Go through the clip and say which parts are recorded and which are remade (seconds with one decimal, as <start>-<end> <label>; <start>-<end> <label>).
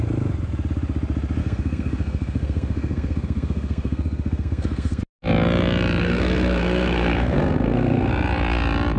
0.0-1.4 recorded; 1.4-5.0 remade; 5.0-6.0 recorded; 6.0-8.1 remade; 8.1-9.0 recorded